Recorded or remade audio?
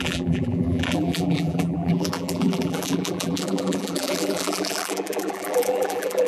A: remade